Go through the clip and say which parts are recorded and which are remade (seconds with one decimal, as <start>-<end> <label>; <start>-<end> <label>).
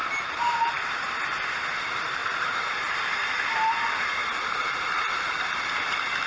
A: 0.0-1.0 remade; 1.0-2.2 recorded; 2.2-3.7 remade; 3.7-4.2 recorded; 4.2-5.4 remade; 5.4-6.3 recorded